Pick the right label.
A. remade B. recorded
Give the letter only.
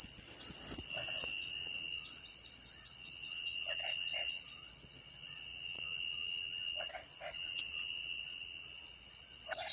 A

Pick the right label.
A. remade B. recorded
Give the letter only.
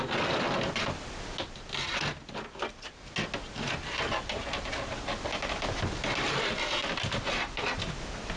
B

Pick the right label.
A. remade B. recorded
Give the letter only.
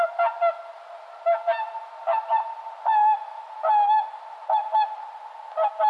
B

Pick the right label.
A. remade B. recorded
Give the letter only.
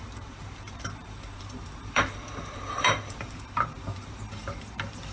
A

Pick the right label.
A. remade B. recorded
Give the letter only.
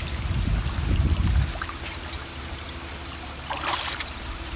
B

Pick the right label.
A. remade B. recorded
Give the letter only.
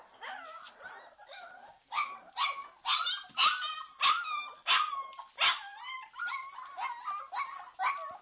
B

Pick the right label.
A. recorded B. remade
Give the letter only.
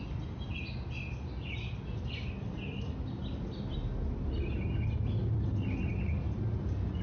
A